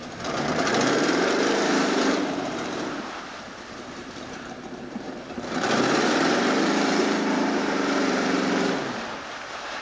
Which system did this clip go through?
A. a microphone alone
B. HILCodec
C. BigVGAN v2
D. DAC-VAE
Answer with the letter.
C